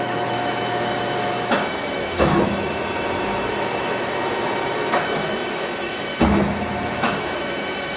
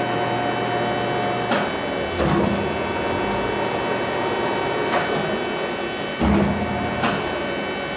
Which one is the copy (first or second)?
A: first